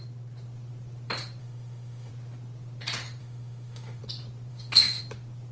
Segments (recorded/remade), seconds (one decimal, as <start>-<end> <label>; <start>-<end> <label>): 0.0-1.4 recorded; 1.4-2.1 remade; 2.1-3.2 recorded; 3.2-4.0 remade; 4.0-4.5 recorded; 4.5-5.0 remade; 5.0-5.5 recorded